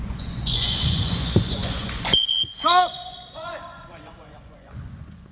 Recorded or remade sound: remade